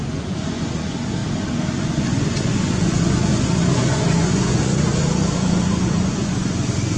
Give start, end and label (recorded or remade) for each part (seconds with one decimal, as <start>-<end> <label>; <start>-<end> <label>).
0.0-1.2 remade; 1.2-1.8 recorded; 1.8-7.0 remade